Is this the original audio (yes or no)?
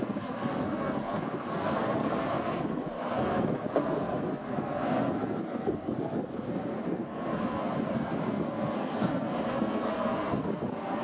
no